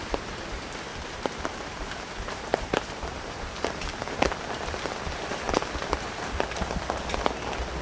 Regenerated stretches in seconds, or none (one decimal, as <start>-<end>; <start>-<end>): 0.9-2.0; 2.5-3.2